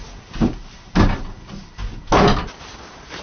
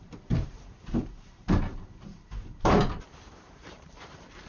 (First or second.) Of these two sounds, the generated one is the second